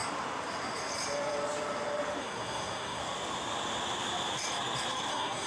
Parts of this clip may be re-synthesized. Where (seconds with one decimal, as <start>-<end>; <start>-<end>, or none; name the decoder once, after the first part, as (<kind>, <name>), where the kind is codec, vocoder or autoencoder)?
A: 2.2-3.0 (codec, SNAC); 5.1-5.5